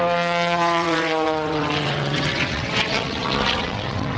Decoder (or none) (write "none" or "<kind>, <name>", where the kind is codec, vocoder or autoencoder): vocoder, WaveNeXt